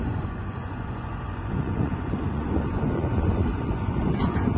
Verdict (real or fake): fake